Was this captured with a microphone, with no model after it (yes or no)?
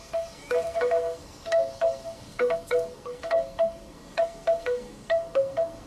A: no